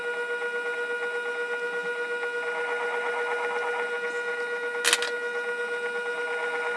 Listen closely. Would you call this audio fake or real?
real